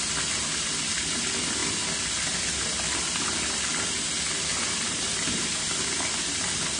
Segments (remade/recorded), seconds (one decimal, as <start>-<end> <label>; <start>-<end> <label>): 0.0-6.8 recorded